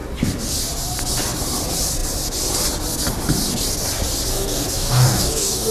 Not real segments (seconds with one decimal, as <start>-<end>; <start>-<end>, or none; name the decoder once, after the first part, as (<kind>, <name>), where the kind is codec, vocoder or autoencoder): 4.3-5.7 (codec, DAC)